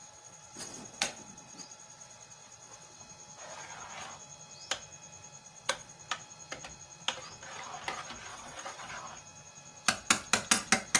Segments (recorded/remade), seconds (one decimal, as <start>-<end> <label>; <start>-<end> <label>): 0.0-3.0 remade; 3.0-5.4 recorded; 5.4-6.0 remade; 6.0-8.3 recorded; 8.3-8.9 remade; 8.9-11.0 recorded